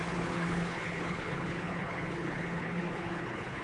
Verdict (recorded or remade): remade